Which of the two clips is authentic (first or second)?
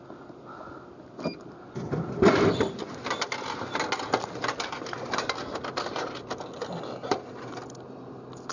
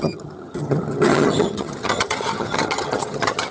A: first